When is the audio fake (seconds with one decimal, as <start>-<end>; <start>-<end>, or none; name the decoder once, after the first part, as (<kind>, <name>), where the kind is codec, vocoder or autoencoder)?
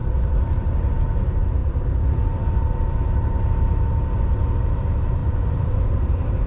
0.0-6.5 (vocoder, BigVGAN v2)